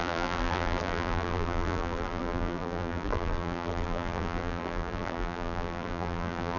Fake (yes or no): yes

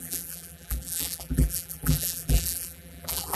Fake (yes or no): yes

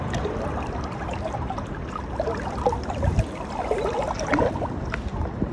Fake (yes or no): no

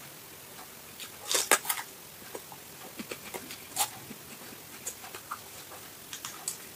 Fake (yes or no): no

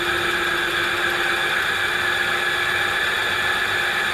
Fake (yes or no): no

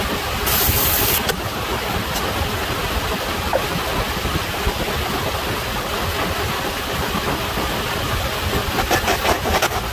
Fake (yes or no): no